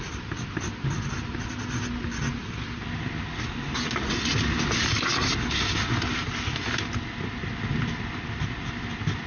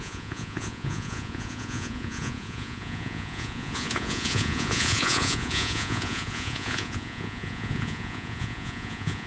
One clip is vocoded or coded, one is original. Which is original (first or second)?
first